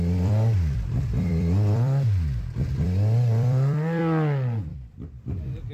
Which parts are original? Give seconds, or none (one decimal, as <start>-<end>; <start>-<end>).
4.0-4.7